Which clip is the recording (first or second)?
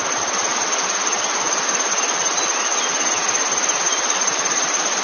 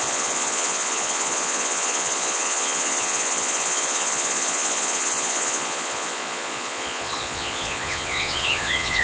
first